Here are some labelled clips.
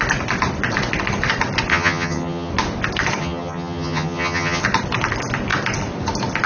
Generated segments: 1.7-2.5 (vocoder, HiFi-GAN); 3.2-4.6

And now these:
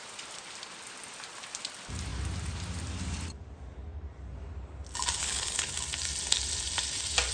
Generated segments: 5.2-5.7 (codec, HILCodec)